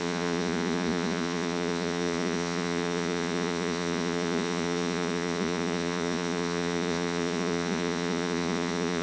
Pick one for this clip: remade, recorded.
remade